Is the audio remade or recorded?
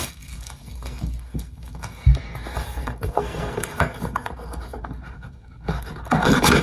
remade